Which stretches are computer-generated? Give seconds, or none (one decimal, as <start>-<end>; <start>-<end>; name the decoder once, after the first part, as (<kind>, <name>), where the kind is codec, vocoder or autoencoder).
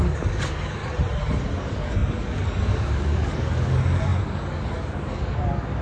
0.0-0.8 (codec, DAC); 1.6-5.8